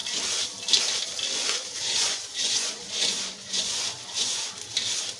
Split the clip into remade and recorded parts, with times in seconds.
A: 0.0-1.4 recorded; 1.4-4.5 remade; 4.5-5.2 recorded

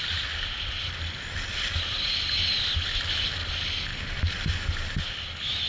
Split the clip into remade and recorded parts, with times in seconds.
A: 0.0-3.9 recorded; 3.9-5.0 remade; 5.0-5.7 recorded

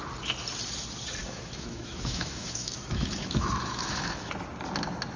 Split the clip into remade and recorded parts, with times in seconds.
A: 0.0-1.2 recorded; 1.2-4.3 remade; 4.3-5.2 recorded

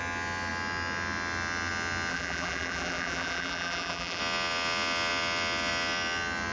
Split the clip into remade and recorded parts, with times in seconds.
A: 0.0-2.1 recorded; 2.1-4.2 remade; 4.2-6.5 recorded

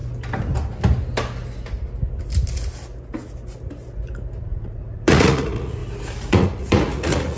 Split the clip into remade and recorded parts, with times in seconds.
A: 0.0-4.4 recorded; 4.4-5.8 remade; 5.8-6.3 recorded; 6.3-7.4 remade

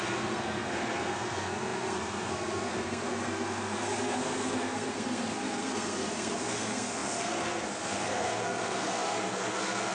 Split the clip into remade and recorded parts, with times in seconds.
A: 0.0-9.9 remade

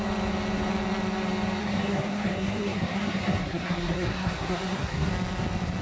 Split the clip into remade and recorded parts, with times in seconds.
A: 0.0-1.6 recorded; 1.6-5.1 remade; 5.1-5.8 recorded

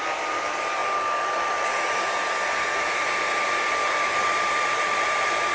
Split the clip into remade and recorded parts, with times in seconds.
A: 0.0-0.8 remade; 0.8-3.9 recorded; 3.9-5.5 remade